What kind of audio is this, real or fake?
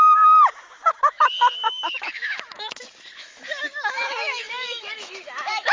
fake